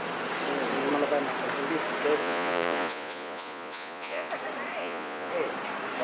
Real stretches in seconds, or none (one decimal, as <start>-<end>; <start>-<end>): 0.0-2.2; 4.3-4.8; 5.3-6.0